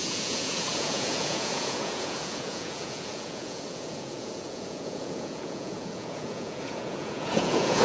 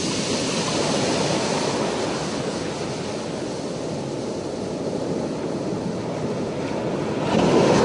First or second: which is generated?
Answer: first